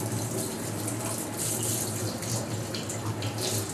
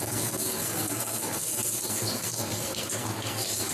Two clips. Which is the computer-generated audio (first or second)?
second